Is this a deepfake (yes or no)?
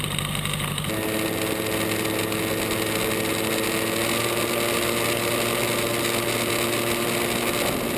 no